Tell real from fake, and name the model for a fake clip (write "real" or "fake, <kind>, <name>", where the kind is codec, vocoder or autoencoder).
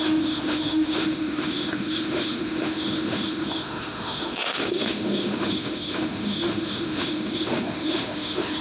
fake, autoencoder, DAC-VAE